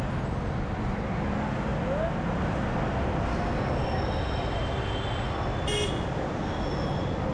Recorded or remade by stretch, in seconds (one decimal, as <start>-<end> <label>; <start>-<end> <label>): 0.0-7.3 recorded